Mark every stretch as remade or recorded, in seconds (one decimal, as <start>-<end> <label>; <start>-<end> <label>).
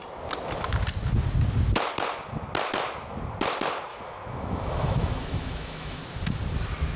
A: 0.0-3.9 recorded; 3.9-6.0 remade; 6.0-7.0 recorded